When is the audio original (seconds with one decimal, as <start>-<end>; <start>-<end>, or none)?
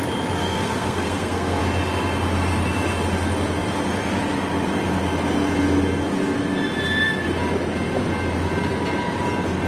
0.0-0.4; 1.6-9.7